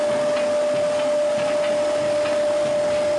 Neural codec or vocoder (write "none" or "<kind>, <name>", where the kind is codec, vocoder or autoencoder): none